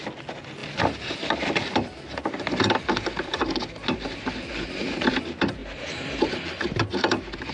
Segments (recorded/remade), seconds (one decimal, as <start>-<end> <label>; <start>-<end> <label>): 0.0-5.6 recorded; 5.6-7.5 remade